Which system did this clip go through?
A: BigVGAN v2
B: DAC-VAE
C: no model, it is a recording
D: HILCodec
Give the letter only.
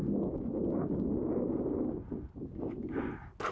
C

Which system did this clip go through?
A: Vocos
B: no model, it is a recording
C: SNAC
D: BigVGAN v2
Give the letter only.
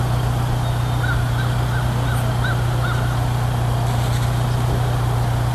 B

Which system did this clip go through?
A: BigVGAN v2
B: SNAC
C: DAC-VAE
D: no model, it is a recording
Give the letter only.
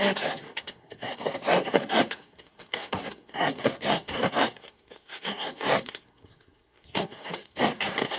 B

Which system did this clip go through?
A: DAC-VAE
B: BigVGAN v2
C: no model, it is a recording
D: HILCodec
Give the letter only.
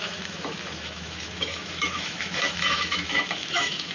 A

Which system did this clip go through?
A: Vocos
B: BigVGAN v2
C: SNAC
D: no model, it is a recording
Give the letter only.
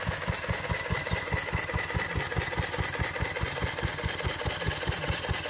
D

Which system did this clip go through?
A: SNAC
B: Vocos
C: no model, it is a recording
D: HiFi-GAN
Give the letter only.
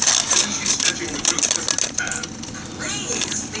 C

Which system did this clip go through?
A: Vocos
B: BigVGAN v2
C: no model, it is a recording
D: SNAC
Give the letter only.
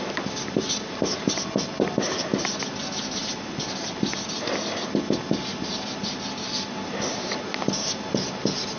C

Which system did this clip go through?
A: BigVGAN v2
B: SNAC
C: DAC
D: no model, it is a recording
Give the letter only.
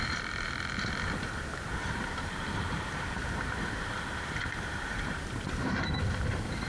A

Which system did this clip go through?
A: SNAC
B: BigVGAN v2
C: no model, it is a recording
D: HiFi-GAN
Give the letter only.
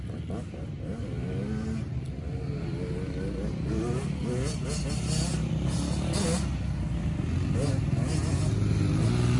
C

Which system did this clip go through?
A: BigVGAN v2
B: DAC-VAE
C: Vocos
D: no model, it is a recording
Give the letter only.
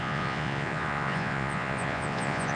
C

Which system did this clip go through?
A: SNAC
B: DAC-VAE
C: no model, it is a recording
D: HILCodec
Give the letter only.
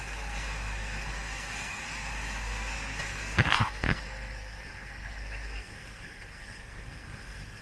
A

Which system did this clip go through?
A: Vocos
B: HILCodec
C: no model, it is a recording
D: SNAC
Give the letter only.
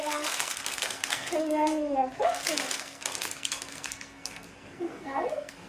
D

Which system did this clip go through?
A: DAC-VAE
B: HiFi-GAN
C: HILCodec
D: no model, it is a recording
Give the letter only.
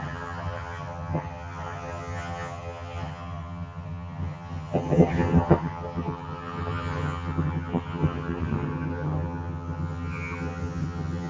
B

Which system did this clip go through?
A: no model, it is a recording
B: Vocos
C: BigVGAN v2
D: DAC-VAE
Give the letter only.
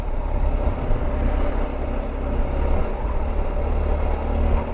A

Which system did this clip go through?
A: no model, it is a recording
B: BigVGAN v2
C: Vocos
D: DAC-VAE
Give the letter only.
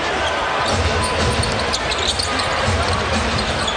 A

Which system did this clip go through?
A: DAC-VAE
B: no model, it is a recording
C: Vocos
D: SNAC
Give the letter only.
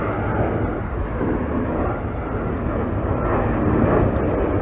B